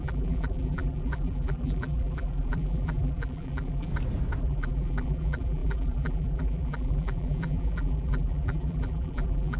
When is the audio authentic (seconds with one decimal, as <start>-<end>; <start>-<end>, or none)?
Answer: 3.9-4.4